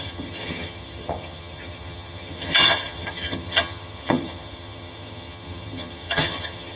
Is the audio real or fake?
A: fake